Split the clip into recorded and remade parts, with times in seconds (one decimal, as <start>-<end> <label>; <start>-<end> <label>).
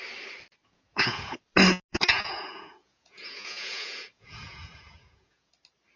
0.0-0.6 recorded; 0.6-1.4 remade; 1.4-1.9 recorded; 1.9-5.5 remade; 5.5-6.0 recorded